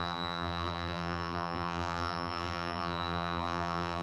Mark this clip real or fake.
fake